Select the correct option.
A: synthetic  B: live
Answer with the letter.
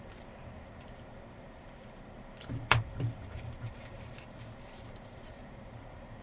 A